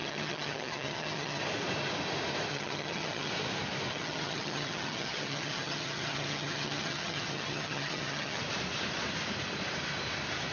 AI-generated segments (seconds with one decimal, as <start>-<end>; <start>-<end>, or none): 0.0-1.4; 2.5-3.3; 3.9-8.4